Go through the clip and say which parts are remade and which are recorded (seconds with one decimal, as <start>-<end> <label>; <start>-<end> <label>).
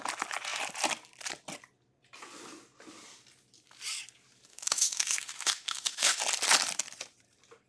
0.0-4.5 recorded; 4.5-6.2 remade; 6.2-7.7 recorded